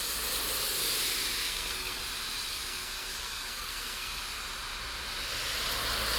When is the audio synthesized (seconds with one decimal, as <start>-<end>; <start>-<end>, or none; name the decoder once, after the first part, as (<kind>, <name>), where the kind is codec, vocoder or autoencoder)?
1.4-2.0 (codec, SNAC); 2.5-4.2